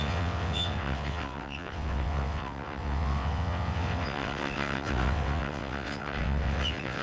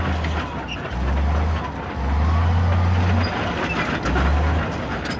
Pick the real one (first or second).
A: second